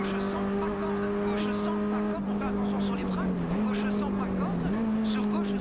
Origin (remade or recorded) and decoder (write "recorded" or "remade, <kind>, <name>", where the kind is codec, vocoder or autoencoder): recorded